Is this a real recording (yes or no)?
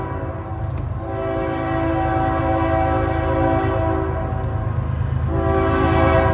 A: yes